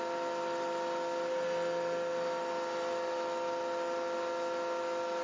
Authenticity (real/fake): real